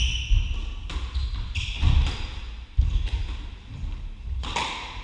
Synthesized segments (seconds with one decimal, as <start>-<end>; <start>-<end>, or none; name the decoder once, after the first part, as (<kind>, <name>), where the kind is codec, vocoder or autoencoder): none